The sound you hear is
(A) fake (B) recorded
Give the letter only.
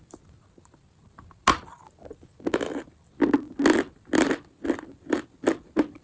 B